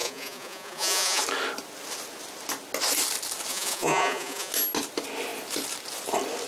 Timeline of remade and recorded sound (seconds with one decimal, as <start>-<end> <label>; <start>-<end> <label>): 0.0-1.2 remade; 1.2-3.5 recorded; 3.5-4.5 remade; 4.5-6.5 recorded